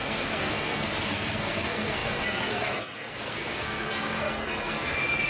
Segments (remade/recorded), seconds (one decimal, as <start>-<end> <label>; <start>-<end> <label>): 0.0-5.3 remade